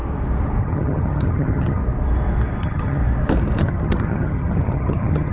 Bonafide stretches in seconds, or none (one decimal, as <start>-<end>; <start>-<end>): 0.0-0.6; 1.8-2.6; 3.0-3.6